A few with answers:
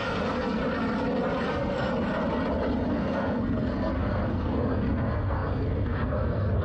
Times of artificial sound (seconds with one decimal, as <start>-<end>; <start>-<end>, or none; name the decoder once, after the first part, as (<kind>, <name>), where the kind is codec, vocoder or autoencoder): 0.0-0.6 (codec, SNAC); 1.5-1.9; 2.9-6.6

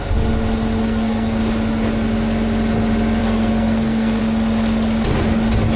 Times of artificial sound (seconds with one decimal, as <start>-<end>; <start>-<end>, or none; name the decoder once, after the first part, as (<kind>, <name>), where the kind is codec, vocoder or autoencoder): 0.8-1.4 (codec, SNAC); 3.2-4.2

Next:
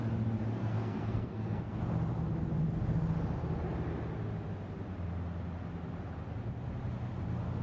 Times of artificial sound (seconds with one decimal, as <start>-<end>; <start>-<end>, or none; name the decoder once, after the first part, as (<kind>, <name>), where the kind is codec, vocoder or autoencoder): 0.6-1.8 (codec, SNAC)

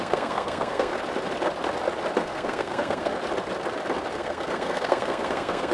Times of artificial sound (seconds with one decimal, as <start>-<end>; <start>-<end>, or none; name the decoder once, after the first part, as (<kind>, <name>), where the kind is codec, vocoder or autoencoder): 0.0-0.9 (codec, SNAC); 2.2-3.1; 4.1-5.7

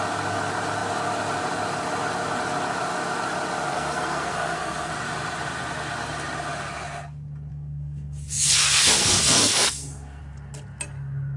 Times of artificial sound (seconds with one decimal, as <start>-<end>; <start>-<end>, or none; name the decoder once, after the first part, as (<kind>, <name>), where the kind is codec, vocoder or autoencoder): 3.7-4.9 (codec, SNAC); 7.5-10.2

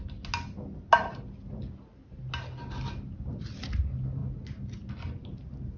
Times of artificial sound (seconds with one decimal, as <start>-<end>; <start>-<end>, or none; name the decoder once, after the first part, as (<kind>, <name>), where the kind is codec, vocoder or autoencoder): none